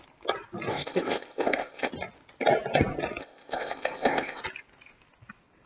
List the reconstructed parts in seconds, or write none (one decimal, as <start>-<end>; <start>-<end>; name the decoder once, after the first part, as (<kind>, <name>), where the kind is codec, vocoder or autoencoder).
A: 0.7-1.9 (codec, ZipCodec); 3.2-4.4